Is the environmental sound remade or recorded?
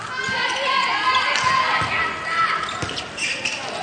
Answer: recorded